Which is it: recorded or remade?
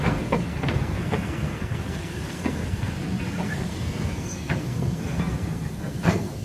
remade